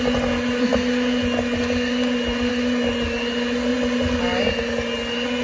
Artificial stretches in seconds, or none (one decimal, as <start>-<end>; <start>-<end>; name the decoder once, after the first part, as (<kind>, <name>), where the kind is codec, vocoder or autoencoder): 3.7-4.4 (vocoder, BigVGAN v2)